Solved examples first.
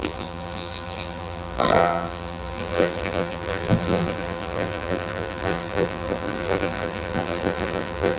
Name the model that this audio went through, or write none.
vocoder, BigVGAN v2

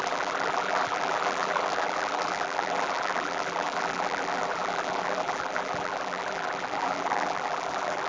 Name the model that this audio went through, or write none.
vocoder, BigVGAN v2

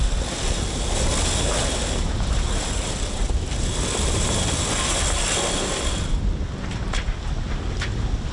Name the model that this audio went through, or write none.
none